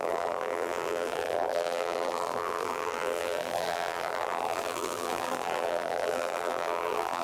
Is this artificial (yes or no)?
yes